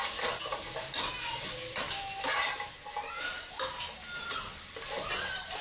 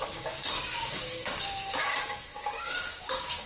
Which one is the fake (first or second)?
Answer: second